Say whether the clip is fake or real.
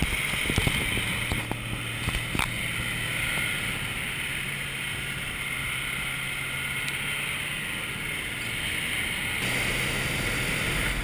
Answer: real